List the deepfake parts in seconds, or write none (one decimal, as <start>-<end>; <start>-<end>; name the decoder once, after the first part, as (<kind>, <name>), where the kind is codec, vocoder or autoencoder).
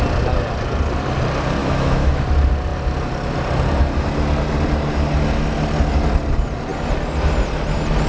1.6-2.2 (autoencoder, DAC-VAE)